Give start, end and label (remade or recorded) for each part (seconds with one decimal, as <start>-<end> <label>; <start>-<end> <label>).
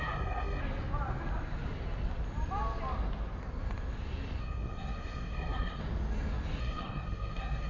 0.0-0.6 remade; 0.6-4.4 recorded; 4.4-5.8 remade; 5.8-6.6 recorded; 6.6-7.7 remade